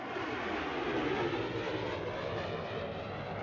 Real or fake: real